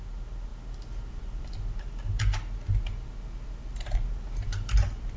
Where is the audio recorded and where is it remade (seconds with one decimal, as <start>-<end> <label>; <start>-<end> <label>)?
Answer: 0.0-5.2 recorded